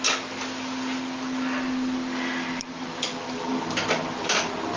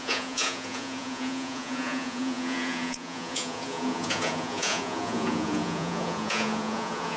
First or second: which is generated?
second